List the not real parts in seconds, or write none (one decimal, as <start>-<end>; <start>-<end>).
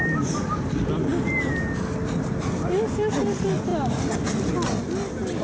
none